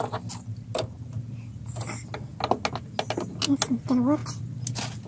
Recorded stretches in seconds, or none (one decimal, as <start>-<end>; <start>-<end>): 0.0-5.1